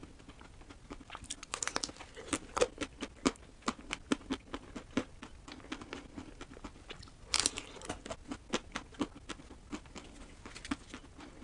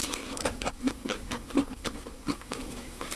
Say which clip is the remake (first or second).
second